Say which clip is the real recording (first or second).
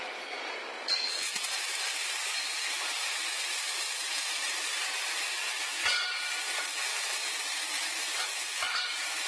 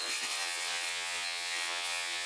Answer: first